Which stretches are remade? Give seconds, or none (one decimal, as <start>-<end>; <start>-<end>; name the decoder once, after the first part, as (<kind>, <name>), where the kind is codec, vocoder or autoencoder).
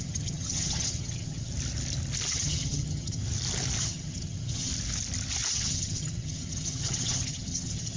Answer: 0.0-1.5 (vocoder, HiFi-GAN); 2.3-3.2; 3.8-4.7; 5.5-8.0